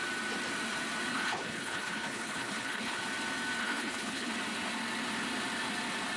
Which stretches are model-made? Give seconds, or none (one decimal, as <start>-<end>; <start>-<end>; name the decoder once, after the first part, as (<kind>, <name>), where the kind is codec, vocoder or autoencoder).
1.1-3.0 (codec, HILCodec); 3.6-4.3